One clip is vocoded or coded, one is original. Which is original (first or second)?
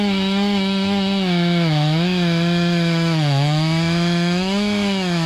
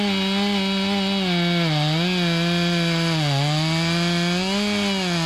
second